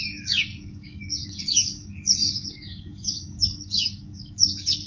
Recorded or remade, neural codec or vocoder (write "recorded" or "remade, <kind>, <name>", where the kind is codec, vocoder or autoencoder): remade, codec, DAC